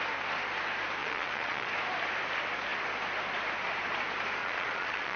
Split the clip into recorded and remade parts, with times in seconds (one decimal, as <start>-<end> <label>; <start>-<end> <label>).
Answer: 0.0-1.0 recorded; 1.0-1.7 remade; 1.7-4.4 recorded; 4.4-5.2 remade